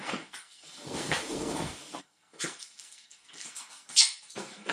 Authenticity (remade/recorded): remade